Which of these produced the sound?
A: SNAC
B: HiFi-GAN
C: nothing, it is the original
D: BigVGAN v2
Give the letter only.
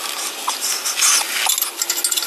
C